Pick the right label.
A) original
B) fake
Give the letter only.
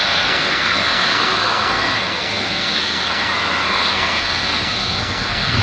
B